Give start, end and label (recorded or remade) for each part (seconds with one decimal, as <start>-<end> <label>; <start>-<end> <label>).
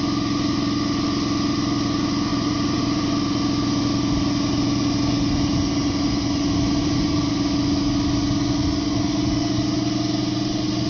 0.0-2.3 recorded; 2.3-3.0 remade; 3.0-6.8 recorded; 6.8-7.3 remade; 7.3-10.9 recorded